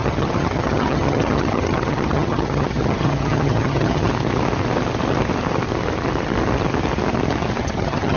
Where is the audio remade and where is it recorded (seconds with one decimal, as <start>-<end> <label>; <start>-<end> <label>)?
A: 0.0-4.1 remade; 4.1-7.6 recorded; 7.6-8.2 remade